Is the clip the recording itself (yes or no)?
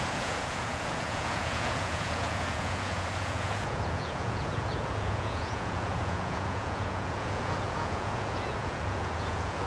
no